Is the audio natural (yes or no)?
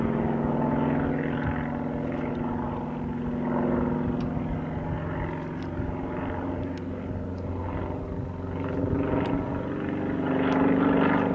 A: yes